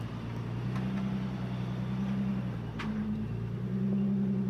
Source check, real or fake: real